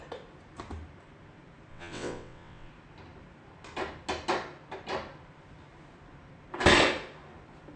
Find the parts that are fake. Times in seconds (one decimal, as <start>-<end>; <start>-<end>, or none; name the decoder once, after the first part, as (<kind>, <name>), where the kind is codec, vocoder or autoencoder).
1.7-2.7 (vocoder, WaveNeXt)